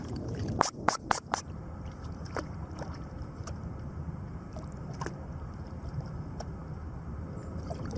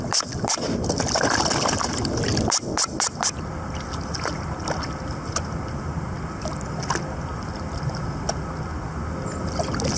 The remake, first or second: first